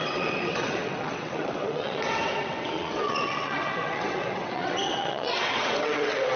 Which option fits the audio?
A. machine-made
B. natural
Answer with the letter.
A